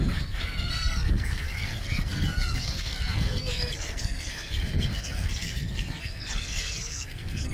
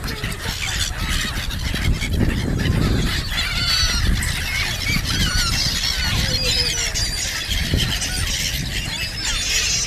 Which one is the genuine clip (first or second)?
second